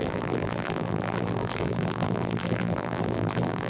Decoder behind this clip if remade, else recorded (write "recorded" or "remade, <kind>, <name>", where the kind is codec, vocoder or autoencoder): remade, vocoder, BigVGAN v2